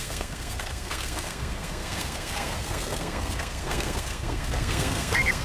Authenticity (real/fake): fake